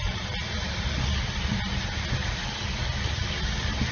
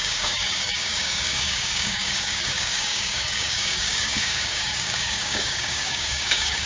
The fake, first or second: second